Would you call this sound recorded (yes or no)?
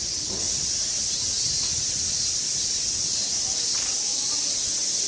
yes